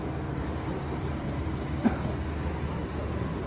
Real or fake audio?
real